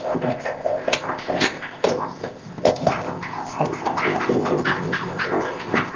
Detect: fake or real fake